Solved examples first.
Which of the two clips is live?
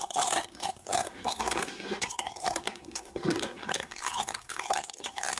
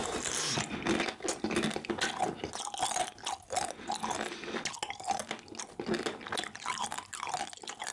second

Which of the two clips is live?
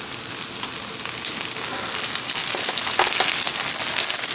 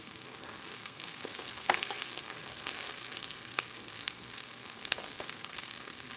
first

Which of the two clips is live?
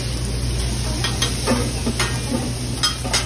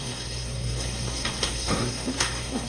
first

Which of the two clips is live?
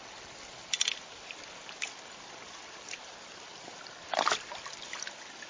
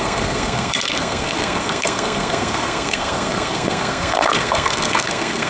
first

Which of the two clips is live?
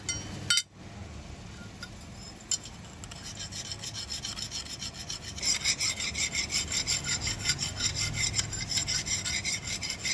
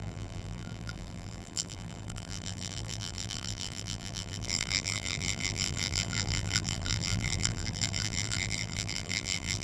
first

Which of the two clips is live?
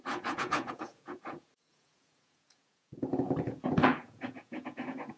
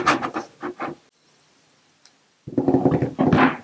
second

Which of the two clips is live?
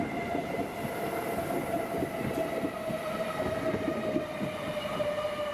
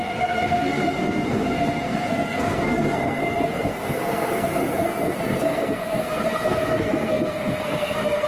first